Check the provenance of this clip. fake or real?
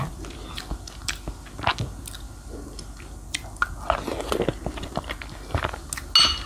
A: real